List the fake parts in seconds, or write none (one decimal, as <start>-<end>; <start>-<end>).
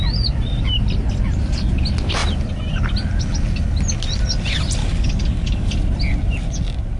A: 4.8-5.7